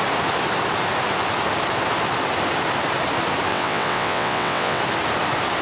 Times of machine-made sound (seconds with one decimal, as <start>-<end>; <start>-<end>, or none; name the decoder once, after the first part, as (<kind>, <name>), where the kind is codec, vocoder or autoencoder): 3.5-4.8 (vocoder, WaveNeXt)